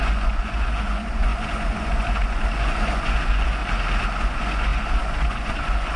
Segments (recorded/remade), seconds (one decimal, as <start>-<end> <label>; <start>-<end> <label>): 0.0-3.6 remade; 3.6-4.2 recorded; 4.2-6.0 remade